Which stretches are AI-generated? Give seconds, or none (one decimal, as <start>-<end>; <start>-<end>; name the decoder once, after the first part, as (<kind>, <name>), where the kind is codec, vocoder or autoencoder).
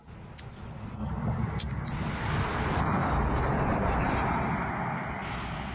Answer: none